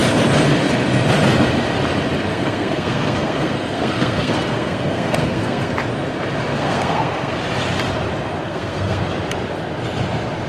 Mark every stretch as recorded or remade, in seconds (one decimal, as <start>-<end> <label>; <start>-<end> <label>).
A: 0.0-2.3 recorded; 2.3-5.7 remade; 5.7-6.5 recorded; 6.5-7.4 remade; 7.4-8.4 recorded; 8.4-9.0 remade; 9.0-10.5 recorded